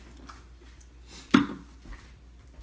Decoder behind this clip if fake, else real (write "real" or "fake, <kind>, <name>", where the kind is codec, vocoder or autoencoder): real